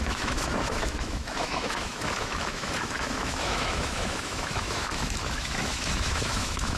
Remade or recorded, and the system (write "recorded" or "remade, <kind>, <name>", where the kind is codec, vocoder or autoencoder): remade, autoencoder, DAC-VAE